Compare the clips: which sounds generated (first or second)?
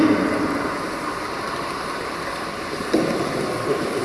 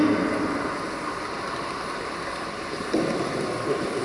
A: first